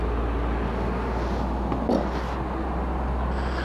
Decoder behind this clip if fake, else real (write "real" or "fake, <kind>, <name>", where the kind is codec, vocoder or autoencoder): real